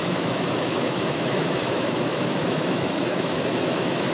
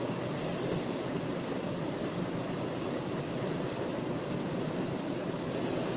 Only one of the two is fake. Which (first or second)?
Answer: first